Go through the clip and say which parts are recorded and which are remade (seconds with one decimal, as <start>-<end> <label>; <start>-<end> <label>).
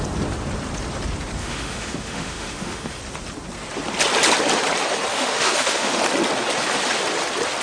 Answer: 0.0-1.4 recorded; 1.4-3.0 remade; 3.0-5.1 recorded; 5.1-6.0 remade; 6.0-7.6 recorded